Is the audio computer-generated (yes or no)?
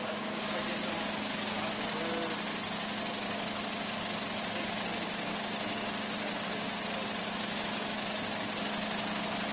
no